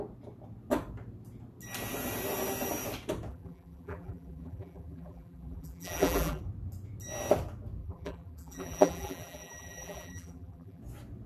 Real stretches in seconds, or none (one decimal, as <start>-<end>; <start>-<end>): 0.0-3.3; 6.4-7.8; 10.8-11.3